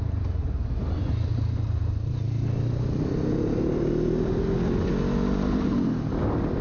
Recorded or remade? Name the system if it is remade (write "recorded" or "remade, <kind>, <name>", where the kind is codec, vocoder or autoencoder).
recorded